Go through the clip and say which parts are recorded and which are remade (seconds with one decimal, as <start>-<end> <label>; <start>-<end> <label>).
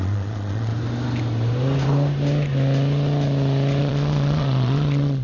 0.0-0.7 remade; 0.7-3.8 recorded; 3.8-5.2 remade